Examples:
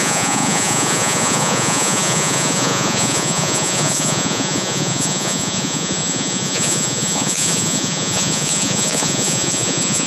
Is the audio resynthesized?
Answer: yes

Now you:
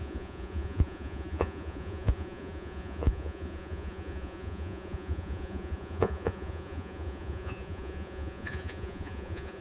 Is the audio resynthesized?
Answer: yes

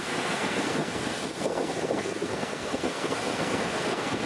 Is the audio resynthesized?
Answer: yes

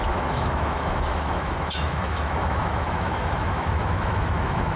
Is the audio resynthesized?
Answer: yes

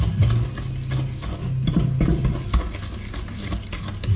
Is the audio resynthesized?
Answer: no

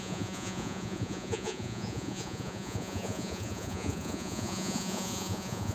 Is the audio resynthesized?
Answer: yes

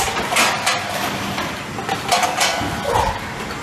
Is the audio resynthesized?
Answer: no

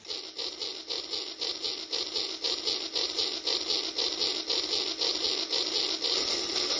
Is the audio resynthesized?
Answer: no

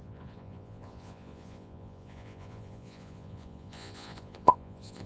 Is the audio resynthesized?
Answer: yes